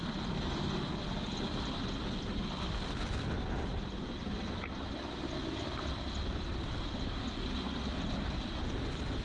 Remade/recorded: recorded